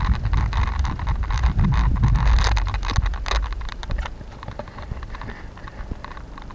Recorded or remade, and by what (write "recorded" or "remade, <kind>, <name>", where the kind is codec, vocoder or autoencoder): recorded